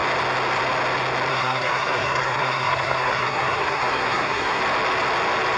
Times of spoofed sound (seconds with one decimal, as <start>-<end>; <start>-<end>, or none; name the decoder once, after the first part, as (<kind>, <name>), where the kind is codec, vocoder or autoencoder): 1.3-4.6 (codec, SNAC)